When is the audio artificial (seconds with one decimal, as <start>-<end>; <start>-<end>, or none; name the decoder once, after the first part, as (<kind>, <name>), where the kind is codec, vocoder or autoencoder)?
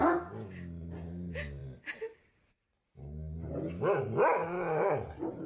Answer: none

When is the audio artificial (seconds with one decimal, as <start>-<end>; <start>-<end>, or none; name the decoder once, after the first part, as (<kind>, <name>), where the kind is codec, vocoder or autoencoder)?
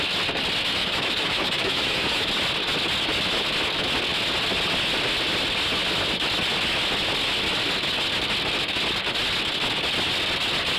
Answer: 0.8-2.3 (autoencoder, DAC-VAE)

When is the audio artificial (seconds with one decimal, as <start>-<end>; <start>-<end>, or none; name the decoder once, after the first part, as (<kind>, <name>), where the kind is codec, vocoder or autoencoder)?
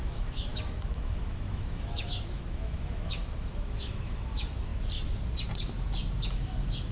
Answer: 0.0-4.7 (autoencoder, DAC-VAE); 6.2-6.9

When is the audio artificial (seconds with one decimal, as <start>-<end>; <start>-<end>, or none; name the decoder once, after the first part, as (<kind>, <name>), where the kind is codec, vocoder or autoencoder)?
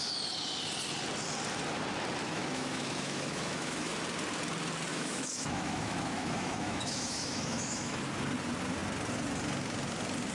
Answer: 2.2-4.0 (autoencoder, DAC-VAE); 4.9-8.0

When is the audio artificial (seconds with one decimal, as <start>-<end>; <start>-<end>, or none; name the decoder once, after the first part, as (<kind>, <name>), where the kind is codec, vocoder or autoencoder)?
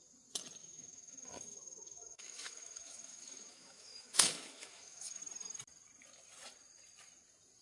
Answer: 0.6-5.2 (autoencoder, DAC-VAE)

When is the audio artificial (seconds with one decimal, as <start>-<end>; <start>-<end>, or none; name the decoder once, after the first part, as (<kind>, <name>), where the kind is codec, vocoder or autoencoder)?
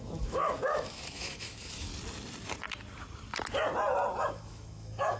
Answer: 0.0-1.9 (autoencoder, DAC-VAE); 4.2-5.2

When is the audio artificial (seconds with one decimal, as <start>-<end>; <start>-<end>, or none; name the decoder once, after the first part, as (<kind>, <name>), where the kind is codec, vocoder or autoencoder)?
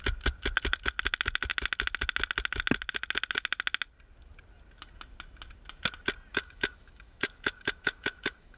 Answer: 6.3-8.6 (autoencoder, DAC-VAE)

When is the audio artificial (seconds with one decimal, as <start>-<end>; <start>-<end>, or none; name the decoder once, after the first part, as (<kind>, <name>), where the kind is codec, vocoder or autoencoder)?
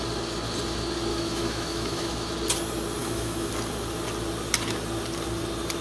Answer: 1.1-2.3 (autoencoder, DAC-VAE); 3.0-3.5